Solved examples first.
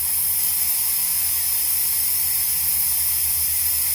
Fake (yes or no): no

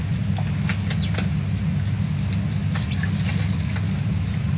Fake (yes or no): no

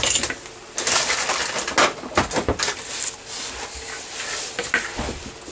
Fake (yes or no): no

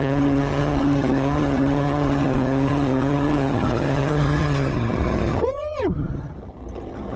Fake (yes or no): yes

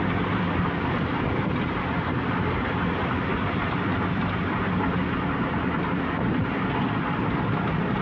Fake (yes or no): no